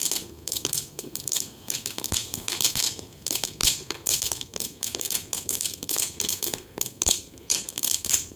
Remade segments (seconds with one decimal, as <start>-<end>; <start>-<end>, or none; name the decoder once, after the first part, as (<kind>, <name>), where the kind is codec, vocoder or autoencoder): 0.0-8.4 (codec, SNAC)